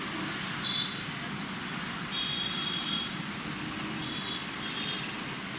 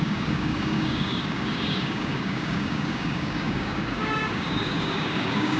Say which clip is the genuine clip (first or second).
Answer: first